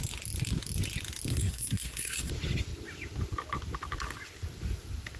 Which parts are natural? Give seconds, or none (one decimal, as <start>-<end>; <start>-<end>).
0.0-1.3; 2.3-5.2